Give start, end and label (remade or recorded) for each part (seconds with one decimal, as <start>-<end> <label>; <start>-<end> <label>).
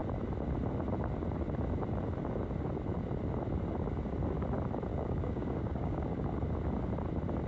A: 0.0-4.9 recorded; 4.9-6.3 remade; 6.3-7.5 recorded